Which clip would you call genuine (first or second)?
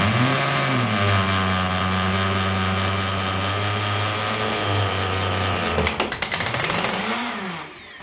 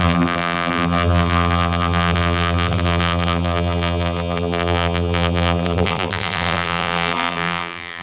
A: first